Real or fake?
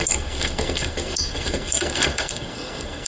fake